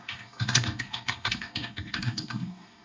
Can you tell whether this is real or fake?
fake